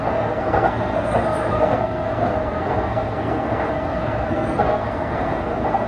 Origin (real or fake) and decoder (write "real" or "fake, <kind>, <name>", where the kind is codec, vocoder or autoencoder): fake, codec, SNAC